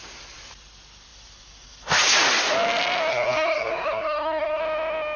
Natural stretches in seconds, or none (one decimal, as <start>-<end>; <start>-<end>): 0.0-3.1; 4.6-5.2